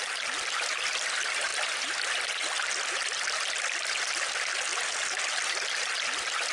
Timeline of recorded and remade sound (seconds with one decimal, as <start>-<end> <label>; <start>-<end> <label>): 0.0-6.5 recorded